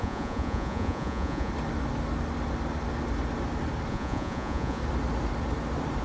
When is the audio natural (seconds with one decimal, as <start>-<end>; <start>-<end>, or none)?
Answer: 1.5-3.9; 4.8-6.0